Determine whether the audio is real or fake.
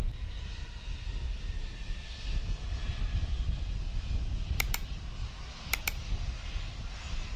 real